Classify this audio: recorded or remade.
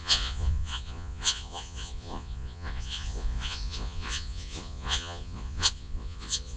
remade